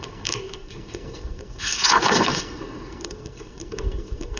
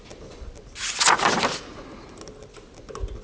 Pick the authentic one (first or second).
second